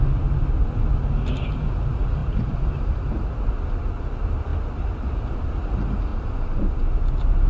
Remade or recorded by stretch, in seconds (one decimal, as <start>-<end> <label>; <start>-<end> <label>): 0.0-2.2 recorded; 2.2-3.4 remade; 3.4-6.1 recorded; 6.1-6.7 remade; 6.7-7.5 recorded